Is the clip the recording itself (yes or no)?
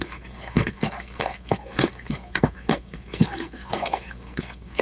no